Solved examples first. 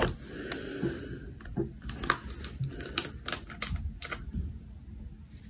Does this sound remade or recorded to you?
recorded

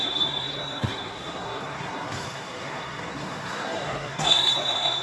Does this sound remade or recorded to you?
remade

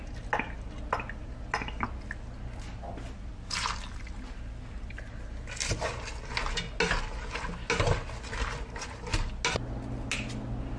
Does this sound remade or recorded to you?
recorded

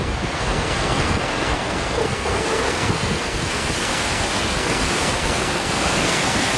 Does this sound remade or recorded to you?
remade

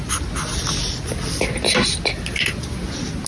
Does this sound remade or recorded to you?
recorded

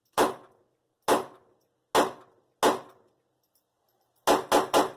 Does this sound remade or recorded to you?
recorded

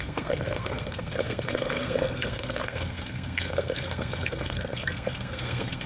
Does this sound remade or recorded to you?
remade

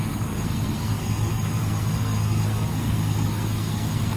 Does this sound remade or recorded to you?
remade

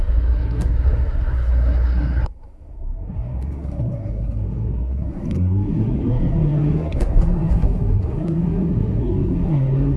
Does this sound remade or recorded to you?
remade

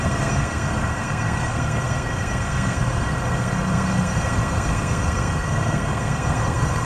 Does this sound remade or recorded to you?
remade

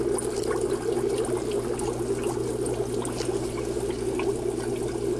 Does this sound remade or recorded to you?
recorded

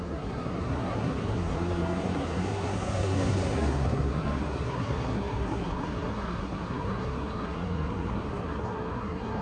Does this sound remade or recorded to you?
remade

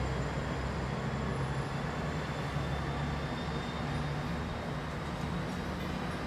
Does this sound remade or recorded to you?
recorded